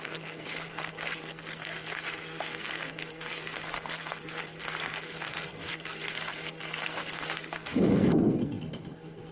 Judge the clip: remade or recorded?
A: remade